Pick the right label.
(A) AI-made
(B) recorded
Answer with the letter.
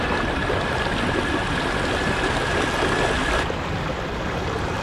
B